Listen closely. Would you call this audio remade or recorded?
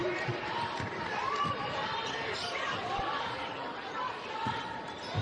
remade